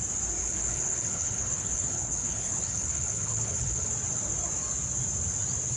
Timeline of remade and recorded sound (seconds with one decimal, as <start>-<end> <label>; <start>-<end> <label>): 0.0-0.4 recorded; 0.4-3.9 remade; 3.9-5.8 recorded